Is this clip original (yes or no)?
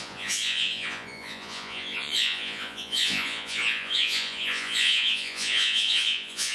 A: no